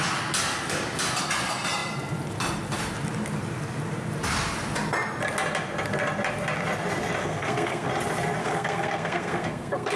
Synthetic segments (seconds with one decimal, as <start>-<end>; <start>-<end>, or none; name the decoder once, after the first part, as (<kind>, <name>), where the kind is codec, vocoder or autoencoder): 7.2-7.9 (codec, SNAC); 8.4-10.0